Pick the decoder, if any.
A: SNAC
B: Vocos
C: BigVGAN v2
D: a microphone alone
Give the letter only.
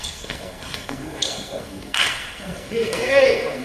A